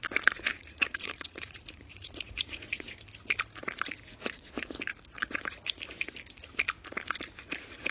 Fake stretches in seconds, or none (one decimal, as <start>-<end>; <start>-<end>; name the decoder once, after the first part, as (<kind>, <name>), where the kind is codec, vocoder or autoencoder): 0.5-3.0 (vocoder, Vocos); 4.2-4.8